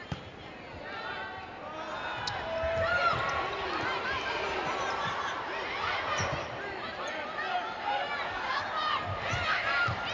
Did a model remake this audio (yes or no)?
no